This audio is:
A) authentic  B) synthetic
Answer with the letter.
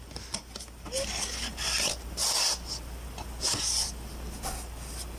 A